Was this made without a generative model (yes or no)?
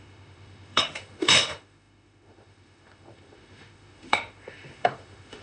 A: no